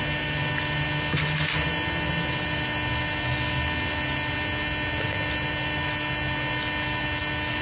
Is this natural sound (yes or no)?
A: yes